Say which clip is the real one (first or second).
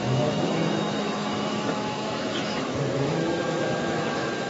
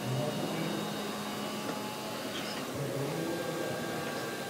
second